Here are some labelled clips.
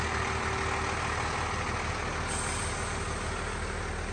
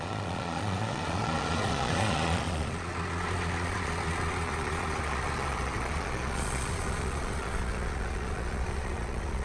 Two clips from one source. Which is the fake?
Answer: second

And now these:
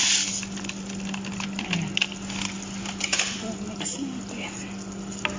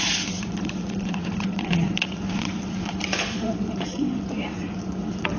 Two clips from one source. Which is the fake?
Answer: second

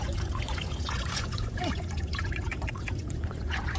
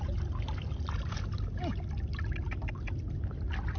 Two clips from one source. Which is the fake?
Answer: first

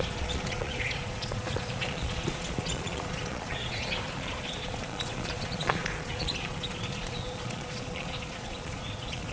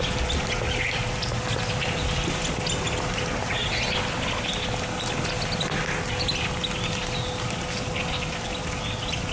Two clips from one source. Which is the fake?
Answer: first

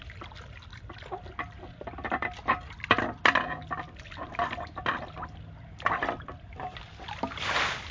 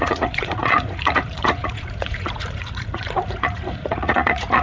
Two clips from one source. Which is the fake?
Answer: second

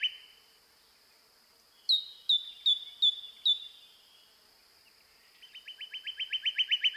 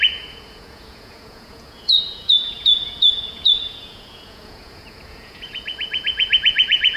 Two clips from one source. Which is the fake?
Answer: second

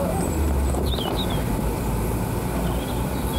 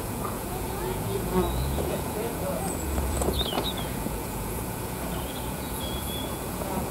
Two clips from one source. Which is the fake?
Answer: second